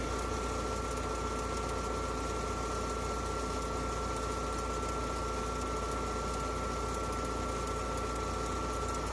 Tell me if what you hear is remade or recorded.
recorded